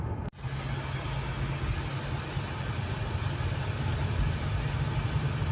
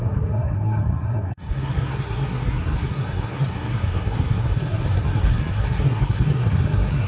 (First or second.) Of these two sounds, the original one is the first